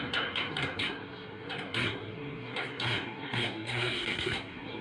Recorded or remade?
remade